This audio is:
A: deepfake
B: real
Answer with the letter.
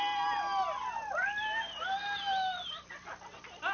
B